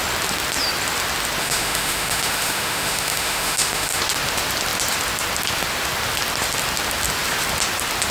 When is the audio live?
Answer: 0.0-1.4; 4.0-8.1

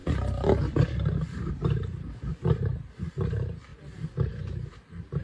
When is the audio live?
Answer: 0.0-5.2

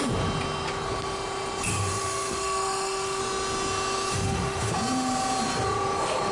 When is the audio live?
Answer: 0.0-1.7; 3.2-4.1; 4.7-6.3

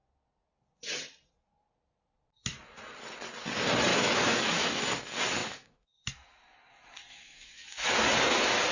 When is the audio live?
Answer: 0.0-3.9; 4.8-5.4; 6.1-7.1; 7.9-8.7

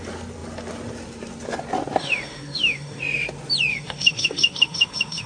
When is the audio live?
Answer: 0.0-2.0; 3.0-3.7

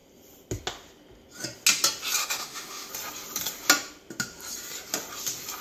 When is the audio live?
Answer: 0.0-2.2; 2.9-5.6

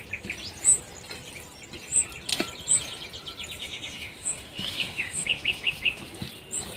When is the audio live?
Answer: 0.0-3.6; 6.0-6.8